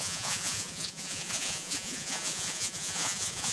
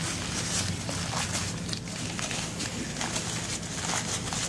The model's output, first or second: first